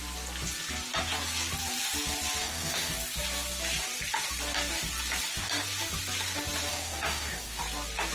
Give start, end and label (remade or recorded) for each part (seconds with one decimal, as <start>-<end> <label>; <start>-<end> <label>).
0.0-2.4 recorded; 2.4-2.9 remade; 2.9-6.7 recorded; 6.7-7.6 remade; 7.6-8.1 recorded